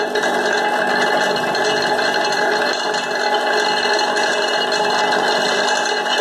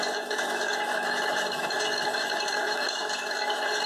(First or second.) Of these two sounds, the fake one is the second